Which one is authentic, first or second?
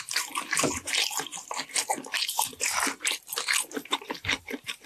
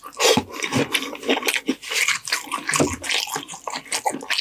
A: second